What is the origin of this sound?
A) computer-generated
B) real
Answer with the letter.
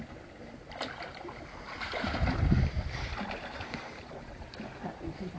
A